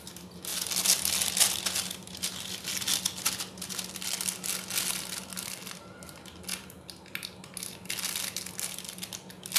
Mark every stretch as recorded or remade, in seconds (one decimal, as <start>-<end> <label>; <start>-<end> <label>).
0.0-9.6 recorded